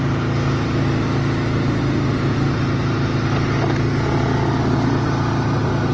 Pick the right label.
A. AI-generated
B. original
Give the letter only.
B